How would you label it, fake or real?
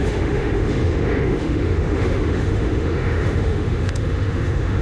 fake